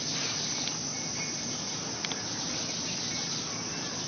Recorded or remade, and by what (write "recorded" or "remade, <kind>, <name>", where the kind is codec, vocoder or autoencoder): recorded